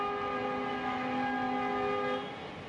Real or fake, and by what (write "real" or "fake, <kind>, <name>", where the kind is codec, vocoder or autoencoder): real